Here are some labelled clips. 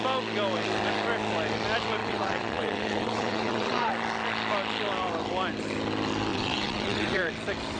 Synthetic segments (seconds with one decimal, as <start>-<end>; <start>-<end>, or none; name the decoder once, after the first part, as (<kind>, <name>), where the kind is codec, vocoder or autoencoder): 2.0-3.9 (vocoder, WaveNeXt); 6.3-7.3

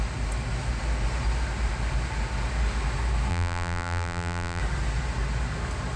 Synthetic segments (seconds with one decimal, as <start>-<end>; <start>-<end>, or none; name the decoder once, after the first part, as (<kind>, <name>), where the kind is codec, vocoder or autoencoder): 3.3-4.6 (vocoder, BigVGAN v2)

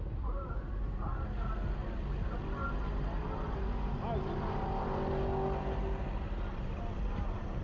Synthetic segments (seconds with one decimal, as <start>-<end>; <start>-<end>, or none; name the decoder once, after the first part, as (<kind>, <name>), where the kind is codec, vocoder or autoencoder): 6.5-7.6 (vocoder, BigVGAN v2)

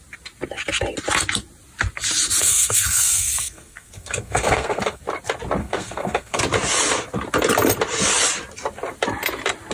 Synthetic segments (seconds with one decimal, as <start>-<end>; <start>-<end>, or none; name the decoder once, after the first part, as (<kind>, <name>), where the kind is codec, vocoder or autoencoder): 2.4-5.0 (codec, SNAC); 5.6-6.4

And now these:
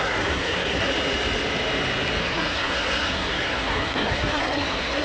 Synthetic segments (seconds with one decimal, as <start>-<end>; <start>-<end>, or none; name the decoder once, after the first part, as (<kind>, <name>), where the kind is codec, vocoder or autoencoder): 0.0-0.9 (codec, SNAC); 2.2-5.0